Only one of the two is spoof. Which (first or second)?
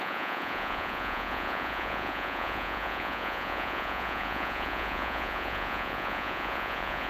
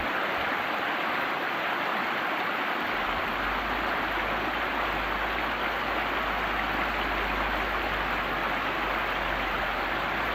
first